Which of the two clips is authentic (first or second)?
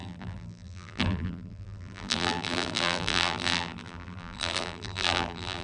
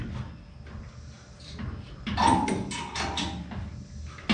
second